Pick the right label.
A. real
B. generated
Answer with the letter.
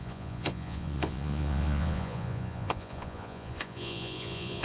B